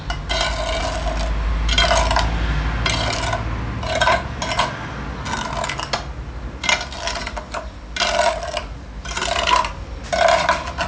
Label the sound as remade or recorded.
recorded